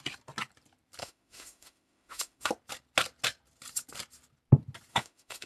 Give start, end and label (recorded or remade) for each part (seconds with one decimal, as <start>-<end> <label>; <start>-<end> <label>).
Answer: 0.0-1.0 recorded; 1.0-2.5 remade; 2.5-4.9 recorded; 4.9-5.5 remade